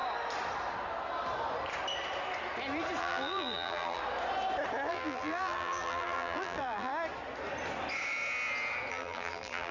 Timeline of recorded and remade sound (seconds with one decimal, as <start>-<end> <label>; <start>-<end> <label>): 0.0-3.0 recorded; 3.0-4.0 remade; 4.0-4.9 recorded; 4.9-6.9 remade; 6.9-8.9 recorded; 8.9-9.7 remade

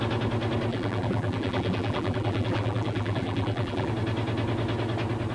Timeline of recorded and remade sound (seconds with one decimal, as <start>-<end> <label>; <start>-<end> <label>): 0.0-0.7 recorded; 0.7-3.9 remade; 3.9-5.3 recorded